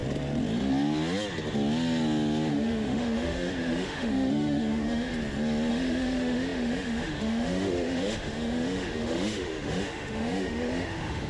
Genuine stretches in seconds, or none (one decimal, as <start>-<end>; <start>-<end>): 0.0-2.5; 5.1-5.7